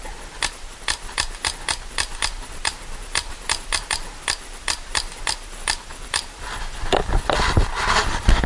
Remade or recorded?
recorded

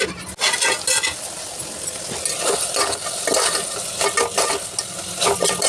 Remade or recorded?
recorded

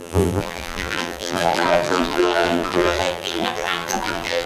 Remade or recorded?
remade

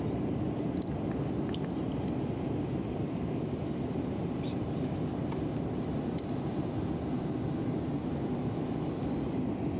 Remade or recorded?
recorded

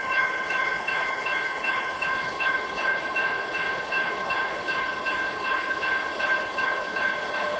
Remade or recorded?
remade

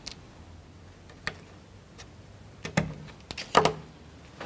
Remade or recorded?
recorded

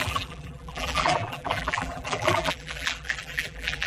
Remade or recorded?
remade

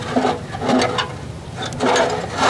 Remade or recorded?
recorded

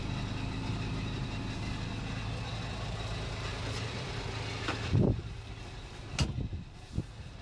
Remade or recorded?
recorded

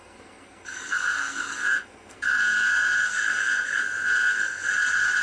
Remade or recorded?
remade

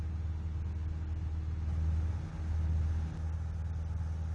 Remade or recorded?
recorded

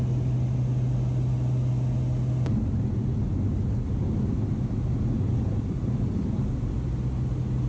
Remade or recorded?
recorded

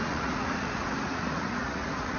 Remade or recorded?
remade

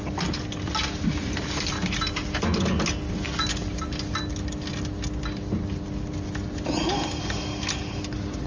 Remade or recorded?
recorded